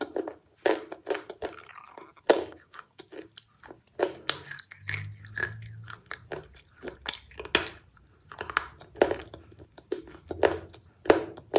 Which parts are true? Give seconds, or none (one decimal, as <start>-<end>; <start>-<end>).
0.0-2.3; 3.0-11.6